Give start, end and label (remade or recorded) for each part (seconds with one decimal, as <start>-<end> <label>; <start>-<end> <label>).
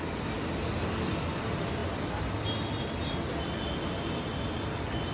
0.0-5.1 recorded